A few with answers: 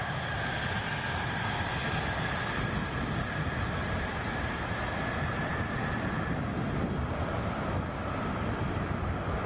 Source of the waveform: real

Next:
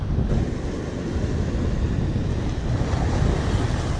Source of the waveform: real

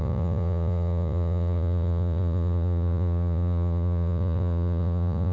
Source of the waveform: fake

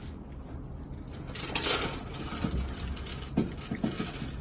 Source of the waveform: real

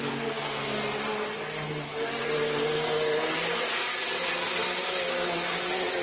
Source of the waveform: real